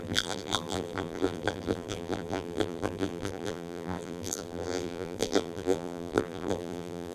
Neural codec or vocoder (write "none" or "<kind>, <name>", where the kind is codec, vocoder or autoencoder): vocoder, BigVGAN v2